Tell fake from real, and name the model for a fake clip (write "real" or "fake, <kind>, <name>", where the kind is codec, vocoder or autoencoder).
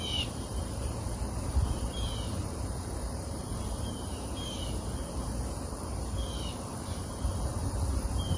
fake, vocoder, BigVGAN v2